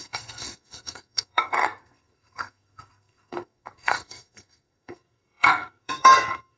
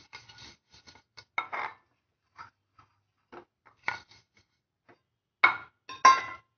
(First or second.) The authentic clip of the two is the second